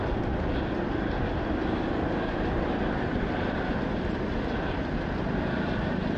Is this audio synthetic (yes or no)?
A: no